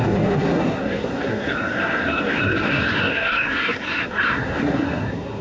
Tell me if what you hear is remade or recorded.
remade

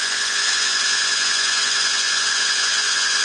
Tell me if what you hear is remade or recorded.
remade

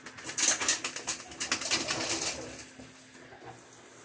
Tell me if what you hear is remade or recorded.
recorded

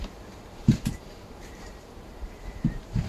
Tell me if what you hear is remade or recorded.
remade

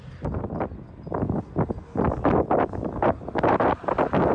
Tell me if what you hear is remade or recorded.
recorded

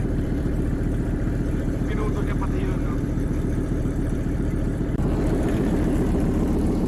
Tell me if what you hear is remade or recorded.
remade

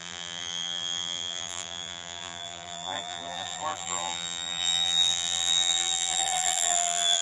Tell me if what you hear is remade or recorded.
remade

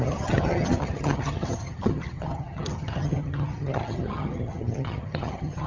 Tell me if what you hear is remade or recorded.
remade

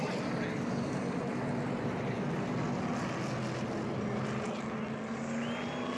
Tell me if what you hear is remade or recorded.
recorded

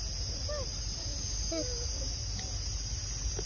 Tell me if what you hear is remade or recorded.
recorded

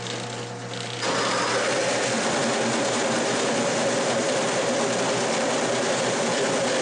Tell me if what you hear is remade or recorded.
recorded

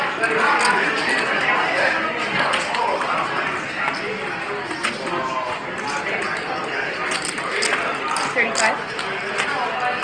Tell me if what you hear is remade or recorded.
recorded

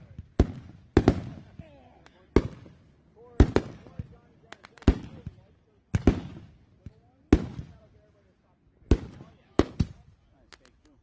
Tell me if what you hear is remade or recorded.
recorded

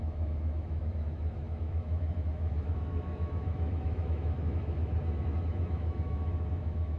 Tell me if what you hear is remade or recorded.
remade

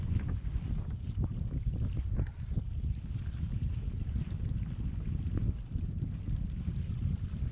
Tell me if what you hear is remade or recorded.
recorded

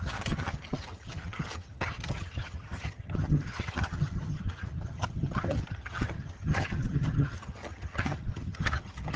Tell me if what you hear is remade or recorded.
remade